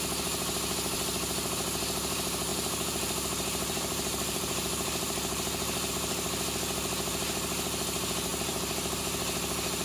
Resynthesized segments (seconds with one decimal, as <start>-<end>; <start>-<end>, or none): 2.5-5.9; 8.3-9.0